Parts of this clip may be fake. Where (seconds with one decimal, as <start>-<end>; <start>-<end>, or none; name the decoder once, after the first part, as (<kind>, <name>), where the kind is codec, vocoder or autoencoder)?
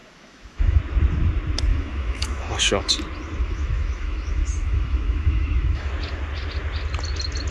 0.0-0.8 (autoencoder, DAC-VAE); 1.7-2.9; 3.4-5.9